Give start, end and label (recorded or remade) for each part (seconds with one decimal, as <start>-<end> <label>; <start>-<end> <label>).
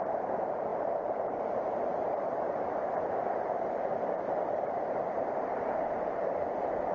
0.0-3.9 remade; 3.9-4.5 recorded; 4.5-6.9 remade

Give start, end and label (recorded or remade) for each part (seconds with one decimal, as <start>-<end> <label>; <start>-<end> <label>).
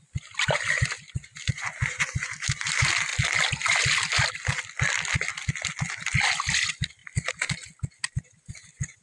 0.0-3.1 remade; 3.1-4.3 recorded; 4.3-7.0 remade; 7.0-8.5 recorded; 8.5-9.0 remade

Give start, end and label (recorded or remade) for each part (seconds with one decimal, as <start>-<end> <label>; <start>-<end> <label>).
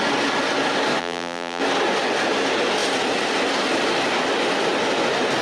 0.0-1.0 recorded; 1.0-1.6 remade; 1.6-5.4 recorded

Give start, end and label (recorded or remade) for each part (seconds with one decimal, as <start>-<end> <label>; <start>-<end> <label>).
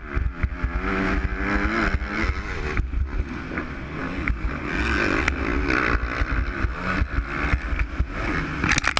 0.0-9.0 recorded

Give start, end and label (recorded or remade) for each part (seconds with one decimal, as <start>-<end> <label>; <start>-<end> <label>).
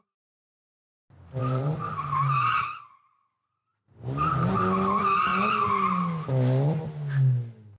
0.0-1.4 recorded; 1.4-2.8 remade; 2.8-3.7 recorded; 3.7-4.5 remade; 4.5-7.8 recorded